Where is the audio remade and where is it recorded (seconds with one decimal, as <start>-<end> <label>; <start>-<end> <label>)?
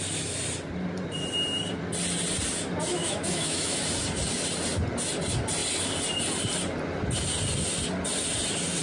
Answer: 0.0-2.9 recorded; 2.9-3.8 remade; 3.8-8.8 recorded